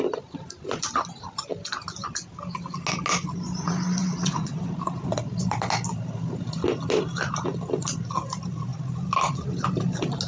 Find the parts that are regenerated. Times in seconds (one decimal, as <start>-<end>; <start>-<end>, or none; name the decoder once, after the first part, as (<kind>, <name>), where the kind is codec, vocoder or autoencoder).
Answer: 4.0-4.7 (vocoder, WaveNeXt)